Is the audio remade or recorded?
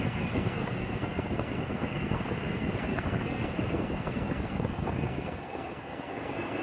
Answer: remade